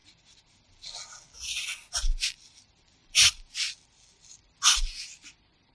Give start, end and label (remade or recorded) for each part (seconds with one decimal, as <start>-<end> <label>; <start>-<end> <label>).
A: 0.0-5.7 recorded